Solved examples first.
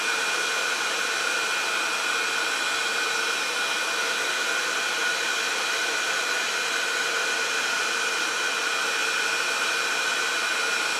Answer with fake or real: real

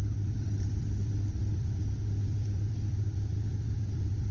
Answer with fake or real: fake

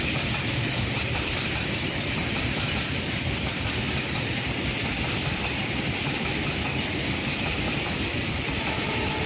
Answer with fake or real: fake